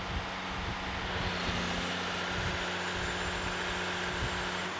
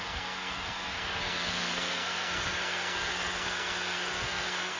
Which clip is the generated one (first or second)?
second